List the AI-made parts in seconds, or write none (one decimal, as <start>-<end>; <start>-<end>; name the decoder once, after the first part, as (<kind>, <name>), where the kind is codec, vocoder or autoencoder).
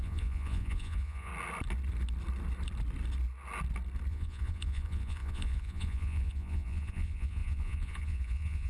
0.0-1.3 (vocoder, Vocos); 4.1-8.7